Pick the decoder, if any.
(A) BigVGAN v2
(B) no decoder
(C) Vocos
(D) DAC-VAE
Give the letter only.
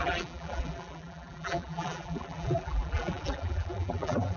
A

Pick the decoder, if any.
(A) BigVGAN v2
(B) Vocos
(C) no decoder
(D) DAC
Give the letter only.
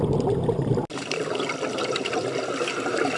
C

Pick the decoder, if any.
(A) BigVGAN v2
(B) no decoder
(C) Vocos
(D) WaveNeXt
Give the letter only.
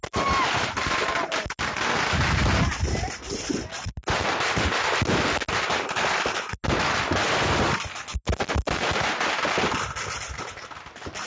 B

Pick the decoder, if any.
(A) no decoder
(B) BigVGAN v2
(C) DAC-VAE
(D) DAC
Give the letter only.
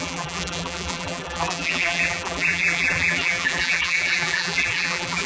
B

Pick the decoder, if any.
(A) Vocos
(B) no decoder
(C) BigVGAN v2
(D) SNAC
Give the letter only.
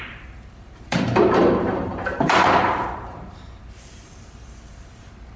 C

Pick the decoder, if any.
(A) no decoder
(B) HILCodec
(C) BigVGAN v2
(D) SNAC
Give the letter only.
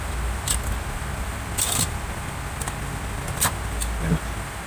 A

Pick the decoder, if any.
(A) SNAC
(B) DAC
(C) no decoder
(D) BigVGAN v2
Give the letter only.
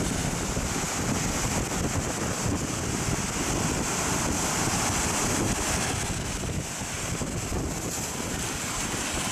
C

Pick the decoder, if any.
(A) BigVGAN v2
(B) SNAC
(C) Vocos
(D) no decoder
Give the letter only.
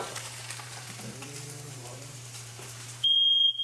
A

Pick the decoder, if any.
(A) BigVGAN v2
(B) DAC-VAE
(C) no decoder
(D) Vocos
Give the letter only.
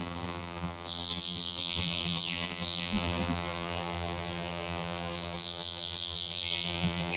A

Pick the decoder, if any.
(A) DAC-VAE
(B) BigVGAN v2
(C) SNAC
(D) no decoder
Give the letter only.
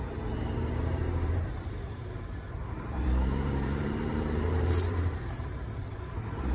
B